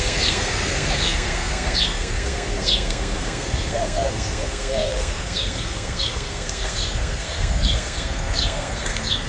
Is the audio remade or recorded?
remade